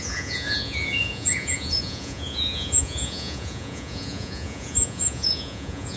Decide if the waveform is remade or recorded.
remade